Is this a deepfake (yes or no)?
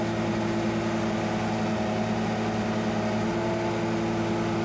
no